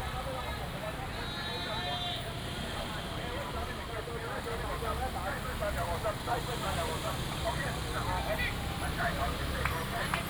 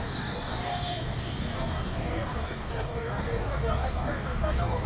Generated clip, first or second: second